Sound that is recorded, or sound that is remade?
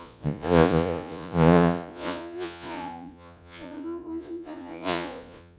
remade